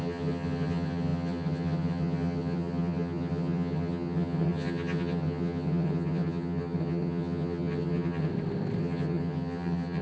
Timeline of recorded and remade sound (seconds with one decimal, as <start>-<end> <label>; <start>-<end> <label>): 0.0-8.3 remade; 8.3-8.8 recorded; 8.8-10.0 remade